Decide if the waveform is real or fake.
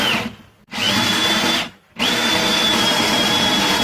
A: real